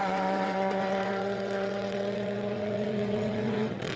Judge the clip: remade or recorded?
remade